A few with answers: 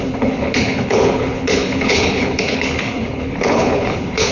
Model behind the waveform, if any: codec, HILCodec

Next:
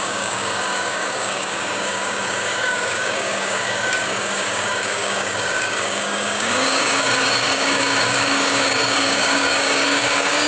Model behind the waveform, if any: codec, DAC